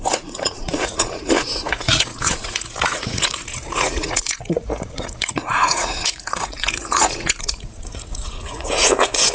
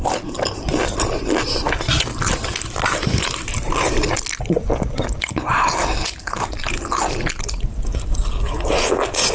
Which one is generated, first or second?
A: first